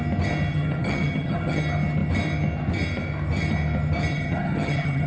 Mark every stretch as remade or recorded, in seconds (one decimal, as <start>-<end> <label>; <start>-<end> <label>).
0.0-0.5 recorded; 0.5-1.6 remade; 1.6-4.1 recorded; 4.1-5.1 remade

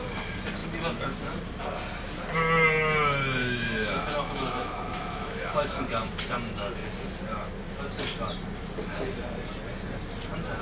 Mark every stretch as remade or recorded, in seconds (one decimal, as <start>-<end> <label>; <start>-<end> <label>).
0.0-3.4 recorded; 3.4-5.8 remade; 5.8-10.6 recorded

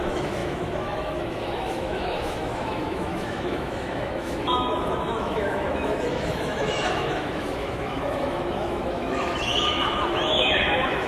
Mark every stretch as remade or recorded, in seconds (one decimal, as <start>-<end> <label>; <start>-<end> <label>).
0.0-11.1 remade

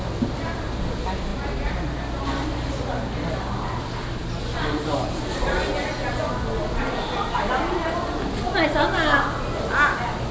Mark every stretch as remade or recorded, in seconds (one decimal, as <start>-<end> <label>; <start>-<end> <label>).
0.0-10.3 recorded